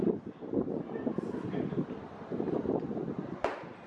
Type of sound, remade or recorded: recorded